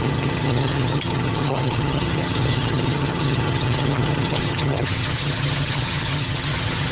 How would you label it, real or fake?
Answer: fake